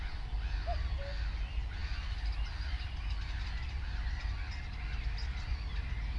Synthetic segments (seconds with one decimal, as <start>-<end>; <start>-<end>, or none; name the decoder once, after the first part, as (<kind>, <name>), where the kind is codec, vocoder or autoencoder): none